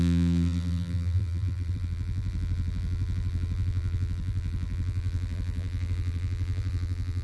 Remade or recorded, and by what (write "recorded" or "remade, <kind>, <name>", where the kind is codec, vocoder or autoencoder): remade, vocoder, BigVGAN v2